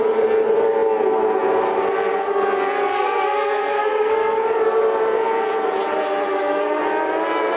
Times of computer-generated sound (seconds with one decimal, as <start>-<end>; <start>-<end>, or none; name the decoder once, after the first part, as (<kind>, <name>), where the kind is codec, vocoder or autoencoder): 2.9-4.4 (codec, SNAC); 6.3-6.8